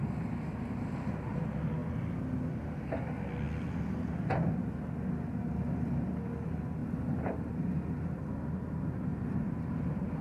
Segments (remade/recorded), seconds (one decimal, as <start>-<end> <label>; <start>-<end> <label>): 0.0-6.8 recorded; 6.8-7.5 remade; 7.5-9.1 recorded; 9.1-10.2 remade

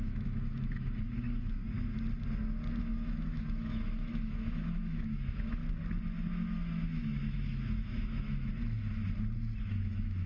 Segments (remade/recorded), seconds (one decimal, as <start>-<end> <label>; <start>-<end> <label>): 0.0-1.6 remade; 1.6-2.8 recorded; 2.8-5.6 remade; 5.6-6.3 recorded; 6.3-8.5 remade; 8.5-9.6 recorded; 9.6-10.3 remade

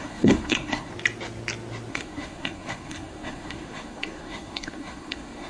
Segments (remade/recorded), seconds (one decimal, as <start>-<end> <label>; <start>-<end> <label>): 0.0-0.9 remade; 0.9-1.9 recorded; 1.9-5.5 remade